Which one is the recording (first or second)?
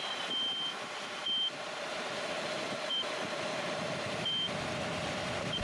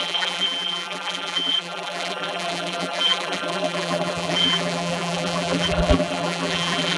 first